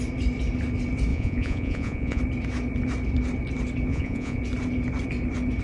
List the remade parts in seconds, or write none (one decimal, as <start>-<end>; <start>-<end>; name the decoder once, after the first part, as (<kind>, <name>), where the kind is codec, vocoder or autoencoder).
1.1-2.2 (vocoder, Vocos); 3.9-4.4